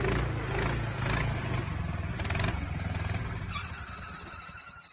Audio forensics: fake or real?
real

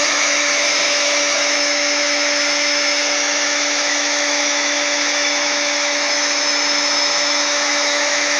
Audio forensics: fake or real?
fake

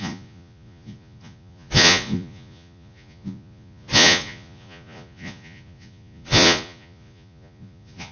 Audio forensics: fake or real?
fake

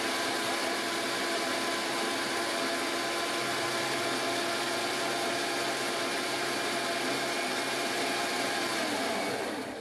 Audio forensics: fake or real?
real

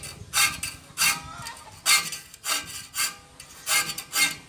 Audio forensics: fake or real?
real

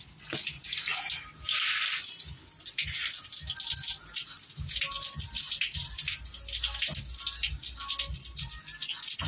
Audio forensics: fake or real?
real